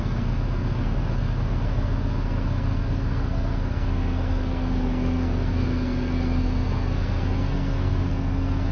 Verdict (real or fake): fake